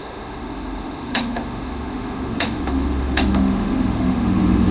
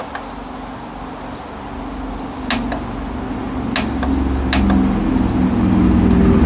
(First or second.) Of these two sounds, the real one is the second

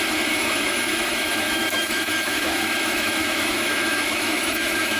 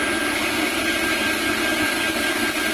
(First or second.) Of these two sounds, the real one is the second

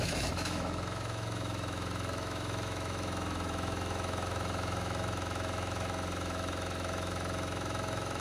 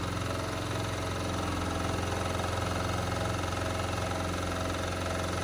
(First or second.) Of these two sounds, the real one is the second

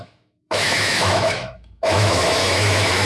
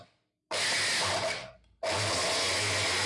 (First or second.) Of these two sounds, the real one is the second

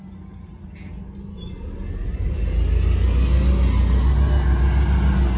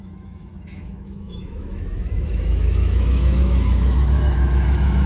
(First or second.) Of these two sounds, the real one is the first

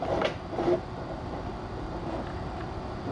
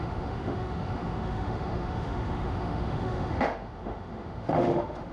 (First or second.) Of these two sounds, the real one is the first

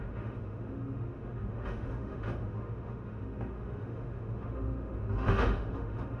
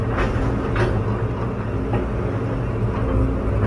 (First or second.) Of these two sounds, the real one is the second